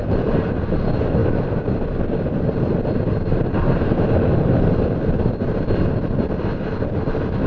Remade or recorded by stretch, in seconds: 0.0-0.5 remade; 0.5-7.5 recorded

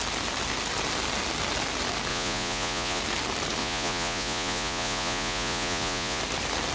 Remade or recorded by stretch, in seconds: 0.0-2.1 recorded; 2.1-3.0 remade; 3.0-3.6 recorded; 3.6-6.2 remade; 6.2-6.7 recorded